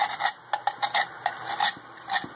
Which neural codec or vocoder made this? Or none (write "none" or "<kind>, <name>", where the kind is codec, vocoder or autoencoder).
none